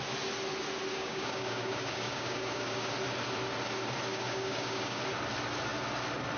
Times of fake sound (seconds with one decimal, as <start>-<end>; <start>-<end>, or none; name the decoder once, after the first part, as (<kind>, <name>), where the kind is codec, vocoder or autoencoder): 0.9-2.9 (codec, DAC); 4.1-5.0